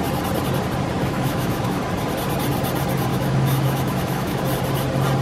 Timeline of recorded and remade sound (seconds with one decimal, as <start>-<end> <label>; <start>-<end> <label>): 0.0-1.0 recorded; 1.0-1.8 remade; 1.8-3.1 recorded; 3.1-4.4 remade; 4.4-5.2 recorded